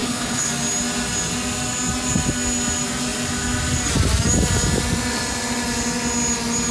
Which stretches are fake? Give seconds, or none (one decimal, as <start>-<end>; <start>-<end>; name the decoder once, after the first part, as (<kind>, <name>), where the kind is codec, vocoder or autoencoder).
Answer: 0.0-0.5 (codec, HILCodec)